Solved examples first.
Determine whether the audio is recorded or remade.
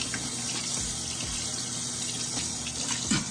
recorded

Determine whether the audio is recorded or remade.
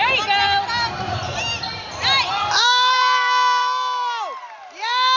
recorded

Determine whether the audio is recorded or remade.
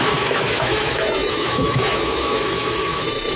remade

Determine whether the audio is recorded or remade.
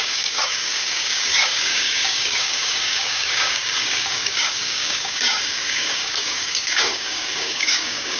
remade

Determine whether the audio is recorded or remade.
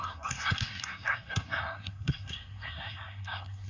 remade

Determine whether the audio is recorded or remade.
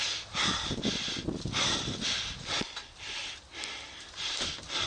recorded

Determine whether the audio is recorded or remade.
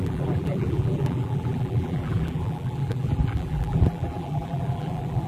remade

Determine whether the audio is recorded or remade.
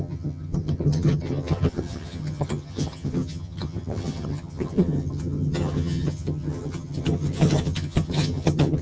remade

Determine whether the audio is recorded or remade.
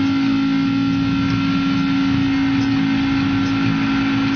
recorded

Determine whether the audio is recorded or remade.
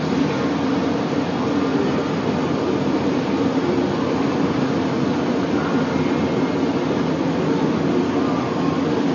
recorded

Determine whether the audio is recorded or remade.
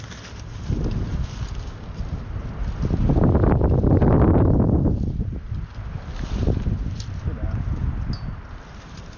recorded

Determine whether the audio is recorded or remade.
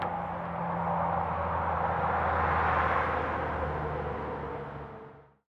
recorded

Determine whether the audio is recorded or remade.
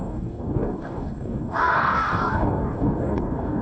remade